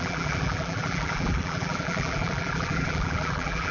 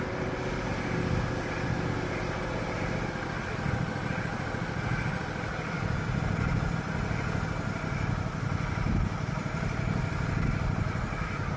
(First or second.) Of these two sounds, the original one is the second